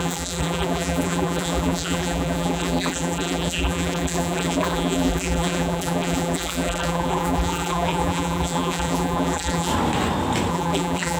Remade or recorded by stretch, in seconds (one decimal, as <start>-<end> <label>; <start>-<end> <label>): 0.0-9.7 remade; 9.7-10.5 recorded; 10.5-11.2 remade